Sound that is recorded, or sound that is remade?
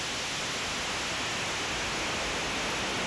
recorded